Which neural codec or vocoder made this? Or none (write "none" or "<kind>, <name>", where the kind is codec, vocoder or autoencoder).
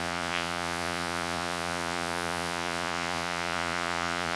vocoder, Vocos